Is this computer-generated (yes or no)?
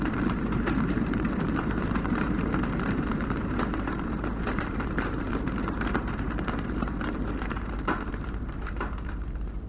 yes